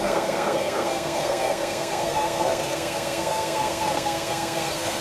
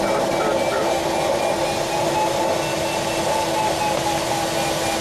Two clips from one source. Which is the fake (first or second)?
first